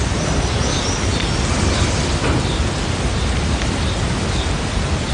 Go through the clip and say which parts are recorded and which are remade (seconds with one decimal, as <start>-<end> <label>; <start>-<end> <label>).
0.0-5.1 recorded